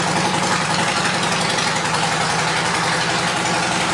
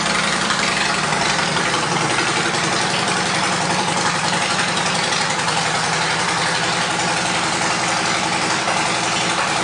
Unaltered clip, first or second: first